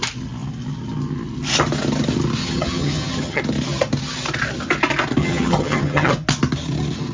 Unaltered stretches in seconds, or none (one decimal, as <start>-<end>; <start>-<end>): 0.0-2.4; 3.4-5.2; 6.1-7.1